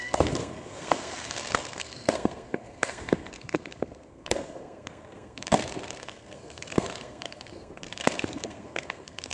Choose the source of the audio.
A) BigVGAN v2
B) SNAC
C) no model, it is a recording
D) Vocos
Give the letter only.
B